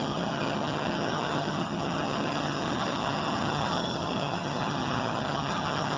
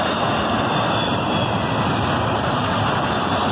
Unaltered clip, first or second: second